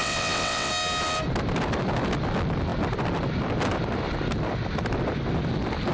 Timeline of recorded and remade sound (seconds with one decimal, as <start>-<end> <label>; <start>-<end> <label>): 0.0-0.7 remade; 0.7-5.9 recorded